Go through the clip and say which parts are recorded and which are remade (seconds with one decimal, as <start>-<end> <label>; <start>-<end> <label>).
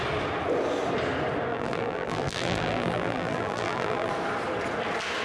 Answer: 0.0-1.5 recorded; 1.5-4.1 remade; 4.1-5.2 recorded